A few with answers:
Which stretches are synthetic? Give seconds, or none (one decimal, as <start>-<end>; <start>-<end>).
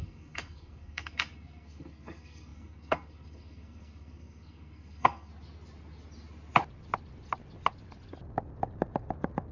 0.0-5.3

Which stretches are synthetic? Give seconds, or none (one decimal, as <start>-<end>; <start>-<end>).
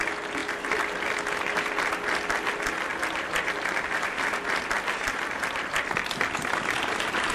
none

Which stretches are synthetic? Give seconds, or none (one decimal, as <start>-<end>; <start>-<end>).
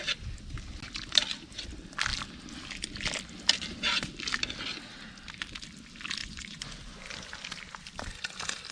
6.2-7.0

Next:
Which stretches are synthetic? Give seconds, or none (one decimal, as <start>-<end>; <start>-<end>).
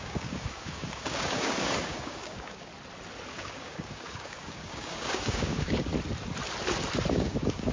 0.0-2.7; 3.3-5.9; 7.1-7.7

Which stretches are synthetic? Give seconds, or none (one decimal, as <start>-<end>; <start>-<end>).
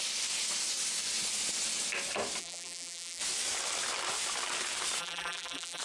2.4-3.2; 5.0-5.8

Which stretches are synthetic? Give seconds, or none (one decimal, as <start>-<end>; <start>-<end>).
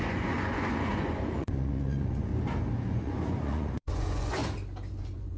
0.0-2.3; 2.9-4.4; 4.9-5.4